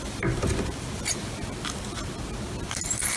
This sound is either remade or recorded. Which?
recorded